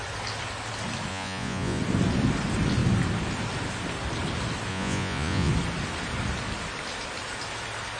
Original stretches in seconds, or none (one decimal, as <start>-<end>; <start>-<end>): 0.0-1.1; 1.8-4.7; 5.5-8.0